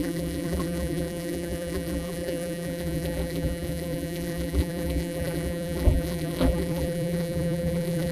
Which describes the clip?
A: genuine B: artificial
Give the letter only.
B